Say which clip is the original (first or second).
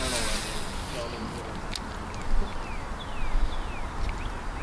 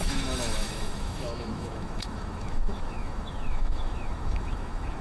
first